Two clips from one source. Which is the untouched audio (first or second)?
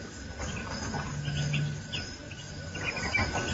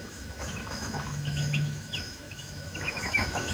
first